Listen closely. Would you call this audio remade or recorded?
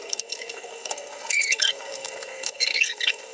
remade